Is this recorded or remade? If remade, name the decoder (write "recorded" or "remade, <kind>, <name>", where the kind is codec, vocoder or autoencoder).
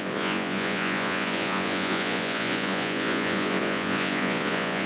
remade, vocoder, Vocos